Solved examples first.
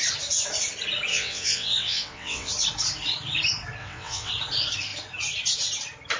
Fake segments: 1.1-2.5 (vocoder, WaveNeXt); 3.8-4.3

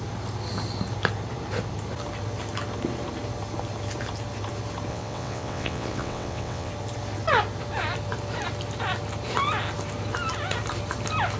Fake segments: 4.9-6.7 (vocoder, WaveNeXt)